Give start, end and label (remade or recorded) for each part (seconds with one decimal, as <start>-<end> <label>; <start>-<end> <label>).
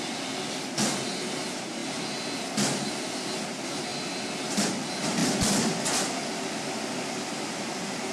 0.0-8.1 recorded